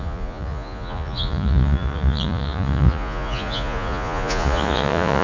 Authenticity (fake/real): fake